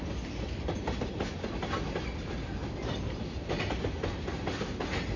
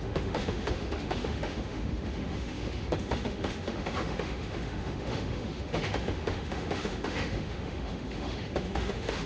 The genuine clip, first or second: first